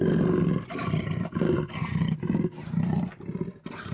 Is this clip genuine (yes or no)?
no